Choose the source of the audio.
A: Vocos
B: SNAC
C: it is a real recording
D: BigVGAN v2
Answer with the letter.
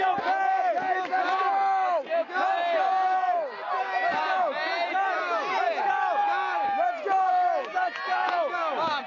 C